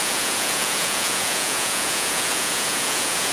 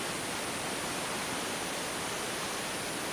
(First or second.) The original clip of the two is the second